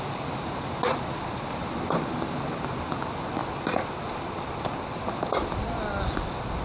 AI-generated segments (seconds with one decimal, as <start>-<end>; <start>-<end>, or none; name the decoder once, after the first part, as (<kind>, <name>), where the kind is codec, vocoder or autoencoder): none